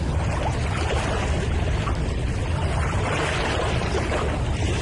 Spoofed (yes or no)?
no